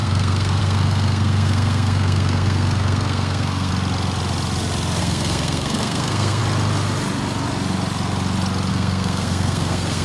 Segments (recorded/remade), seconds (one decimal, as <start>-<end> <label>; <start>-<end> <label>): 0.0-3.7 remade; 3.7-5.0 recorded; 5.0-6.4 remade; 6.4-8.7 recorded; 8.7-10.0 remade